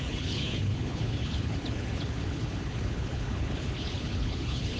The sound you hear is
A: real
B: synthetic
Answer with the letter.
B